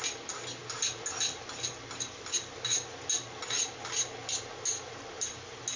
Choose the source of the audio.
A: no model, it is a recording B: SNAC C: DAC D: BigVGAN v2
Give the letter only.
A